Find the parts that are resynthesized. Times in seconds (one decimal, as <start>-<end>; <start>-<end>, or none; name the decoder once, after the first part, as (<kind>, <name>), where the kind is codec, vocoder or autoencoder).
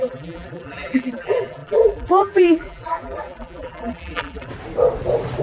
0.0-4.5 (vocoder, BigVGAN v2)